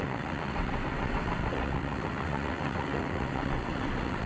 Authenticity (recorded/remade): remade